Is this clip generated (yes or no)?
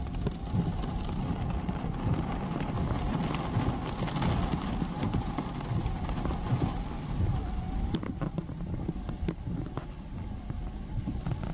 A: no